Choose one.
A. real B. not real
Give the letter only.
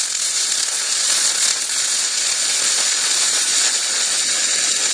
B